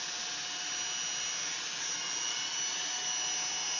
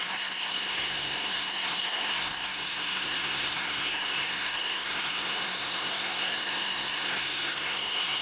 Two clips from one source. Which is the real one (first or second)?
first